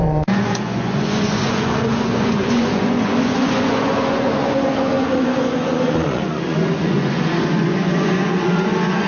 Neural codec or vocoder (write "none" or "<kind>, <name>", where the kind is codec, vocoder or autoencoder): vocoder, Vocos